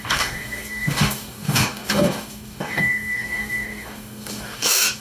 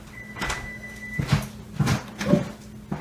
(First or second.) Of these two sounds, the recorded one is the second